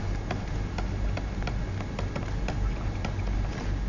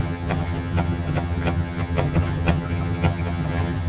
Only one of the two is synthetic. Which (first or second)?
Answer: second